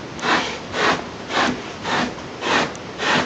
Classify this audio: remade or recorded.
recorded